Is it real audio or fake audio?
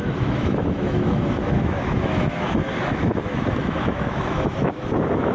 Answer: fake